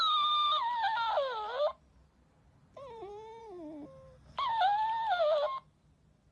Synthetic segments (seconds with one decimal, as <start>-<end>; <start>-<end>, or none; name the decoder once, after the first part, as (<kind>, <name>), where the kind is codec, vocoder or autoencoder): 2.0-3.4 (vocoder, BigVGAN v2)